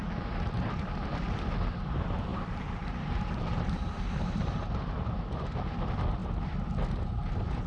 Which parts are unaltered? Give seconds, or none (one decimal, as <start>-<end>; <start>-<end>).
0.0-2.3; 4.7-7.7